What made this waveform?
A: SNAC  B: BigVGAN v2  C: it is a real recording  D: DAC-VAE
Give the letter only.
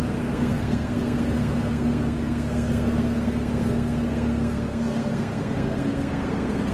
A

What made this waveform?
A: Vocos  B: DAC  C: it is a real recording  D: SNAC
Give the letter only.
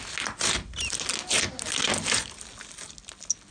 C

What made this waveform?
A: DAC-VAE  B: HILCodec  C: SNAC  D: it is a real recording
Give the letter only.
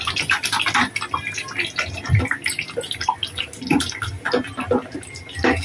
D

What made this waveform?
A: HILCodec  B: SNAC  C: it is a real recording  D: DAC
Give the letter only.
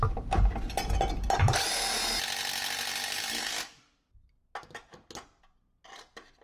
C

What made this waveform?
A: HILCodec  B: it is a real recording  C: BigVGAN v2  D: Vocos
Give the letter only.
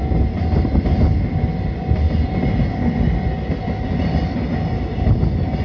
B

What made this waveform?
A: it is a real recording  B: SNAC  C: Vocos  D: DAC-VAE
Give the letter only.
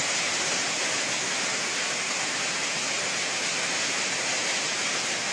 A